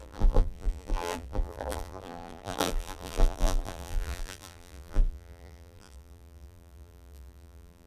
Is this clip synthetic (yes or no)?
yes